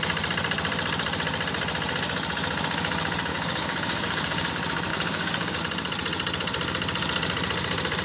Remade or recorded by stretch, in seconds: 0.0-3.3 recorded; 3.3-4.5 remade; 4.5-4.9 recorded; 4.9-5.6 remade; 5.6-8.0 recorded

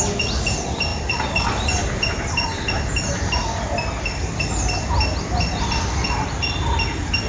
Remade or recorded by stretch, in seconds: 0.0-7.3 recorded

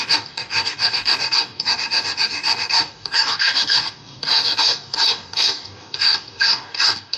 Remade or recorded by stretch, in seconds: 0.0-7.2 remade